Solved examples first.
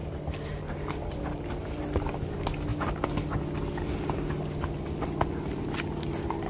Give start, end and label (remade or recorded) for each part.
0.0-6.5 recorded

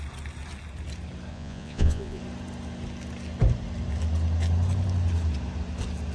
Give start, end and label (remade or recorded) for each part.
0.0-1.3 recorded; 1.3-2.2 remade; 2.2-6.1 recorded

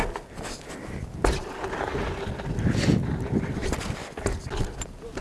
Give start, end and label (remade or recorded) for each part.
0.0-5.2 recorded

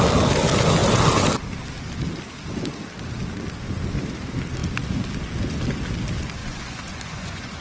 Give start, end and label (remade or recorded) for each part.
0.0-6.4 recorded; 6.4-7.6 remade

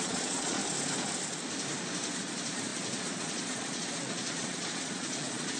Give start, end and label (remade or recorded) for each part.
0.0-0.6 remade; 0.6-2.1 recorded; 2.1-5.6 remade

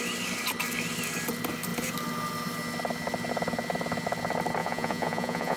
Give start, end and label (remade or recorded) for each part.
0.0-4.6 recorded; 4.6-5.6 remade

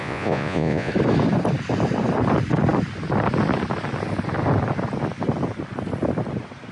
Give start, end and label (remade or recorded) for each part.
0.0-0.9 remade; 0.9-6.7 recorded

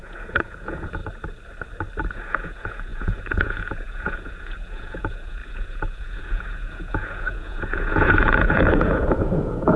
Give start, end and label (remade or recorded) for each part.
0.0-1.0 remade; 1.0-2.1 recorded; 2.1-9.8 remade